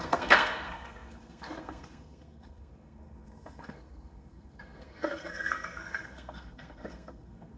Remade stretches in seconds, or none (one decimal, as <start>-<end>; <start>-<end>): 0.0-7.6